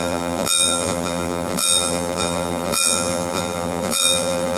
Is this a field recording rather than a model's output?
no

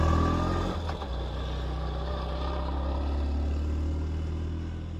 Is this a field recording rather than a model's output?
yes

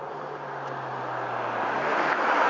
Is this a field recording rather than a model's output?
yes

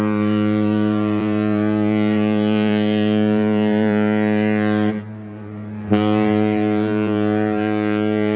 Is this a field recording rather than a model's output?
no